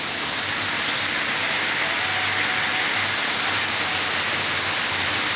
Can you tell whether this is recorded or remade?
recorded